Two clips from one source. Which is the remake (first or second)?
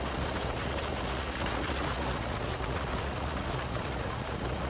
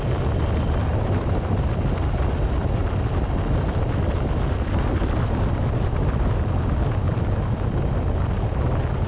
first